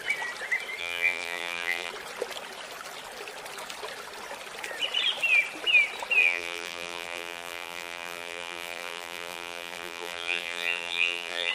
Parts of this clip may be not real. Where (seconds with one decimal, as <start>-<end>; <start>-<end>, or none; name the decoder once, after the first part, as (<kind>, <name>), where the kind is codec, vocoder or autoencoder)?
0.8-1.9 (vocoder, BigVGAN v2); 6.2-11.5